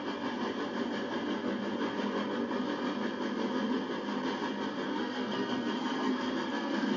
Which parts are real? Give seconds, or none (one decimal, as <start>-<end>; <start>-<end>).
0.0-4.9